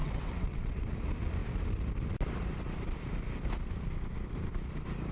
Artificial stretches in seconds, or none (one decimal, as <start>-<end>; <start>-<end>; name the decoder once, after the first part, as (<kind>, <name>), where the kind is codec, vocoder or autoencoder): 0.0-0.9 (vocoder, WaveNeXt)

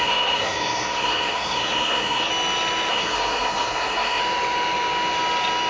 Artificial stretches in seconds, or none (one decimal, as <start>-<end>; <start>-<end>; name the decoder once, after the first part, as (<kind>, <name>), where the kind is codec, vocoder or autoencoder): 0.0-2.3 (codec, SNAC); 2.9-4.2

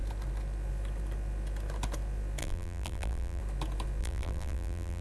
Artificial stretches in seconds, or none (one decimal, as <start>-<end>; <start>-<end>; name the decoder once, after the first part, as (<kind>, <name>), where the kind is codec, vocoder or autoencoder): 2.4-3.4 (vocoder, BigVGAN v2); 4.0-5.0

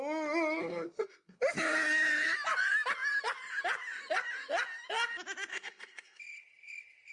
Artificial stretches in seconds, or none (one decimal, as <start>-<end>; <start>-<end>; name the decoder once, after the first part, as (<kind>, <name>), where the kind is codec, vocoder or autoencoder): 0.6-1.4 (codec, SNAC); 5.5-6.2

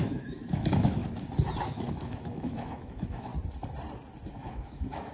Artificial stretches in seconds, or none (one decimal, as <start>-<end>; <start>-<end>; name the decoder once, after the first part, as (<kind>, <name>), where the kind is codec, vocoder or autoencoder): 0.0-1.0 (autoencoder, DAC-VAE); 1.6-3.3; 4.3-5.1

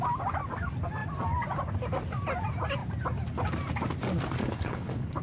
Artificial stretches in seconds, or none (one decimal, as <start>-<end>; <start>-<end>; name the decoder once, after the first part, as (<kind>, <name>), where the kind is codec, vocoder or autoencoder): 4.4-5.2 (codec, HILCodec)